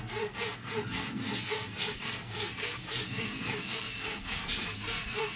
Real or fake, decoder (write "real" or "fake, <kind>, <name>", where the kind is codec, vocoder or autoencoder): fake, codec, SNAC